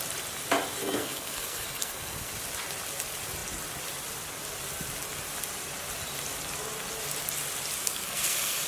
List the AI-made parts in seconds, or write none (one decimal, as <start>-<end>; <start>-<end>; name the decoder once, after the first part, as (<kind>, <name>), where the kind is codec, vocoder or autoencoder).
0.8-2.3 (codec, SNAC); 7.8-8.7